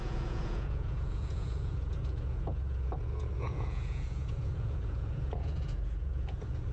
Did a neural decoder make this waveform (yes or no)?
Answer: yes